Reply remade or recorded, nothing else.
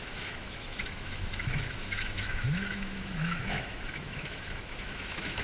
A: remade